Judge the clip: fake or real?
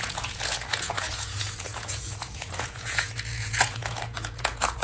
fake